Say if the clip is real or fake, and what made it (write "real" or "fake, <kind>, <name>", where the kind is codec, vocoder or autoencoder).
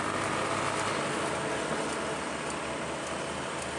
real